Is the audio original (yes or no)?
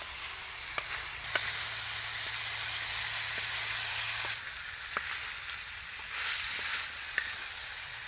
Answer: yes